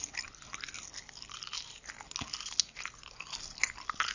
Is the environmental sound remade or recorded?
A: recorded